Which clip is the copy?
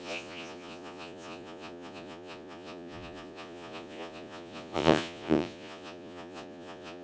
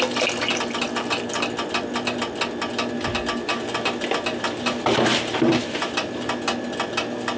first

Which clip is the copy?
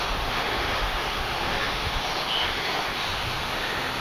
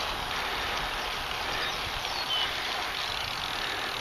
first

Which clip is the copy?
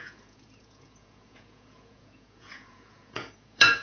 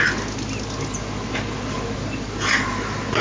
first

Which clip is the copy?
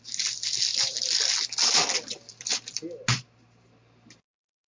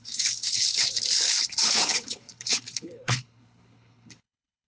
second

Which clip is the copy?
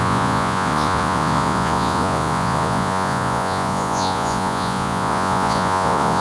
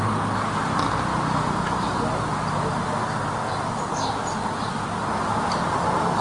first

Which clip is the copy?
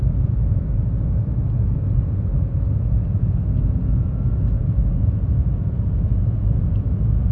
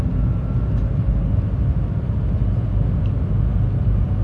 first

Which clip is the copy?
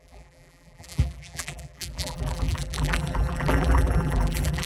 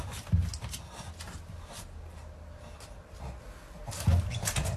first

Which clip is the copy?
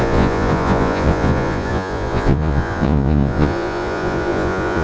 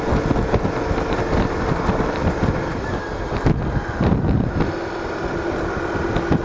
first